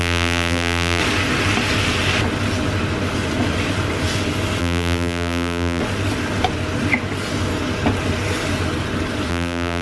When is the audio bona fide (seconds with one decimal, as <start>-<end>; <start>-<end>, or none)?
1.0-4.6; 5.8-9.3